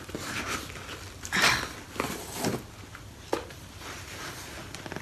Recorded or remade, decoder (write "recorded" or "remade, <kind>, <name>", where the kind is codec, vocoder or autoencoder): recorded